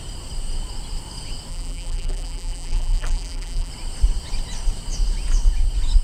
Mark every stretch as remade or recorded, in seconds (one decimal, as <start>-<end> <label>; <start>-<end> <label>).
0.0-1.5 recorded; 1.5-3.7 remade; 3.7-6.0 recorded